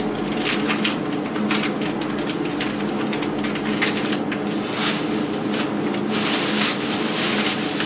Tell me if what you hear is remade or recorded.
recorded